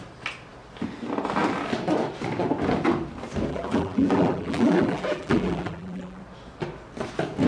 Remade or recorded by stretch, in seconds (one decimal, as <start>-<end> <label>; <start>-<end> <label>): 0.0-3.5 recorded; 3.5-6.2 remade; 6.2-7.5 recorded